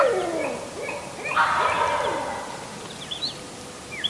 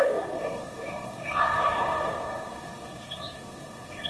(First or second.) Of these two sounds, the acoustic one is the first